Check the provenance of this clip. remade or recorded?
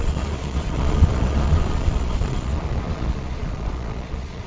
remade